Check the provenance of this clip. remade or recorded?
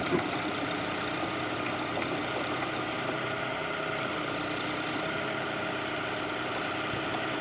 remade